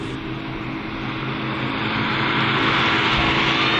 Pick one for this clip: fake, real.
real